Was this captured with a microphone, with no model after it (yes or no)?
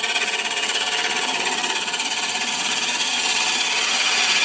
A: no